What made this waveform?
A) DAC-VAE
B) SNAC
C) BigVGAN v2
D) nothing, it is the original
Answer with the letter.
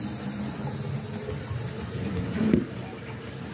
D